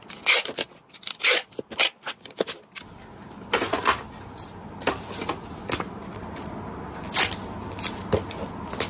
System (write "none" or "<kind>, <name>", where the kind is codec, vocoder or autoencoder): none